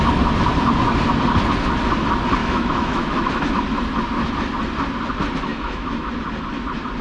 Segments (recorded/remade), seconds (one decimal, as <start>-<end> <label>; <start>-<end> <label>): 0.0-2.4 recorded; 2.4-3.3 remade; 3.3-5.5 recorded; 5.5-6.1 remade; 6.1-7.0 recorded